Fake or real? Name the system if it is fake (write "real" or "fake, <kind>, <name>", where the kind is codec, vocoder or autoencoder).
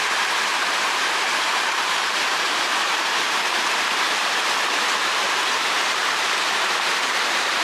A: fake, vocoder, BigVGAN v2